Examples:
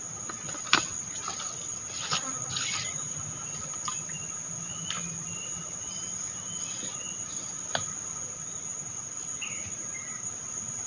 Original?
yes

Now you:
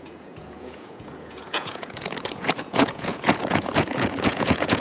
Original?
no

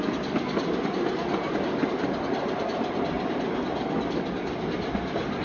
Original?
yes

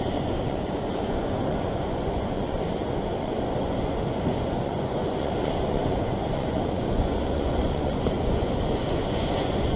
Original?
no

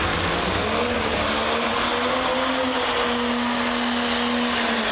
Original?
yes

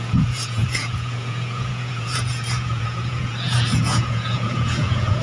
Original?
no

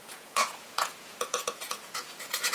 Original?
no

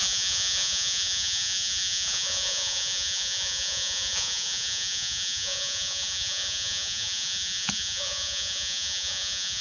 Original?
no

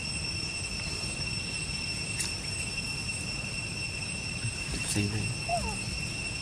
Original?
yes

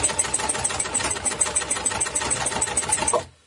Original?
yes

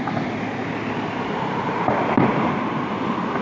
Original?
yes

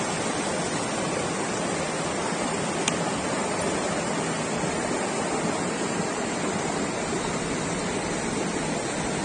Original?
yes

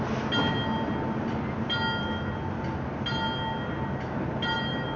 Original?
yes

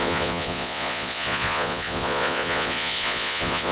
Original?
no